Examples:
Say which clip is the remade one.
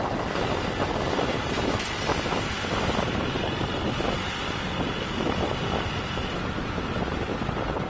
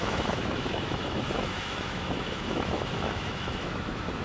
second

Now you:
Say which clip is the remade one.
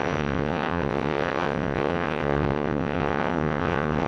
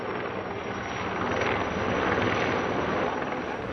first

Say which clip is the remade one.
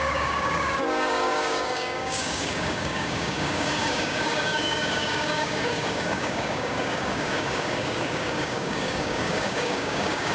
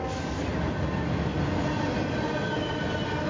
first